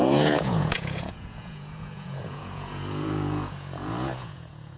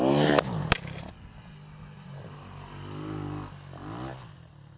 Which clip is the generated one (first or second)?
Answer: first